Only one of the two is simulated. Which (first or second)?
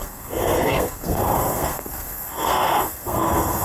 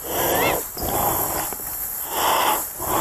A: first